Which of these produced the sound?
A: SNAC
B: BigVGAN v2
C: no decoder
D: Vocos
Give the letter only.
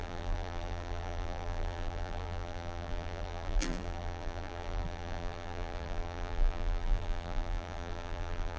B